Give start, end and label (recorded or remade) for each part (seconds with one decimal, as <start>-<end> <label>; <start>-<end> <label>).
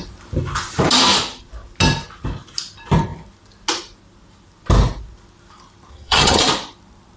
0.0-5.9 recorded; 5.9-6.4 remade; 6.4-7.2 recorded